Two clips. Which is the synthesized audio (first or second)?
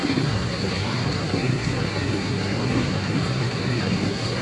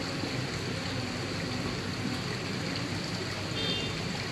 first